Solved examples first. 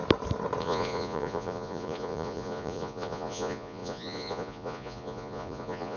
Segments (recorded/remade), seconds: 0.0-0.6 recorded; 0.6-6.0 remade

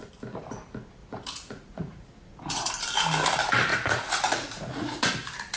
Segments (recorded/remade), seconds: 0.0-1.0 recorded; 1.0-2.7 remade; 2.7-3.7 recorded; 3.7-5.1 remade; 5.1-5.6 recorded